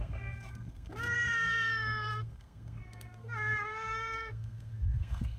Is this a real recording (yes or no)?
no